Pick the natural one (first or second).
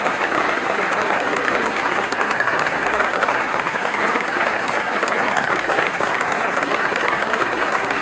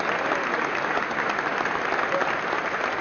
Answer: second